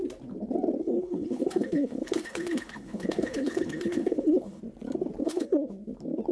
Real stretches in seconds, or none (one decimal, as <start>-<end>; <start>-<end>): 0.0-0.8; 4.6-5.2; 5.7-6.3

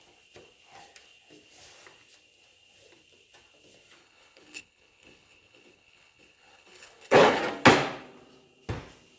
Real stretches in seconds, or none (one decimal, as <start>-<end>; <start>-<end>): 0.0-4.0; 7.4-9.2

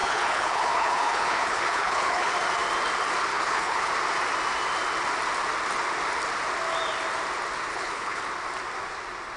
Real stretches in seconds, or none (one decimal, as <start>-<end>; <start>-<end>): 2.3-3.3; 3.9-7.7; 8.2-9.4

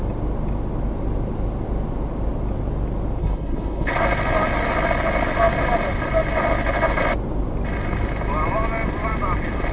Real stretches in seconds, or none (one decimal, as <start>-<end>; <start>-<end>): 0.0-3.2; 3.9-9.7

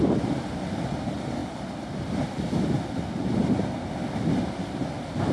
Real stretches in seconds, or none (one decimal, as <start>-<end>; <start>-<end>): 0.0-5.3

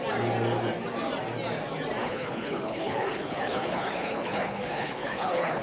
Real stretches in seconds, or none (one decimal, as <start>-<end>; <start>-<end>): 0.0-2.0

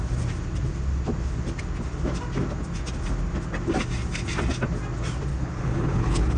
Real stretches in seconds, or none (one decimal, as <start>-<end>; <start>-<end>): 0.0-5.3

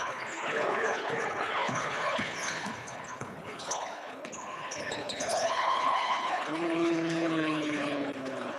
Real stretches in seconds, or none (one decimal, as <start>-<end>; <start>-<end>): none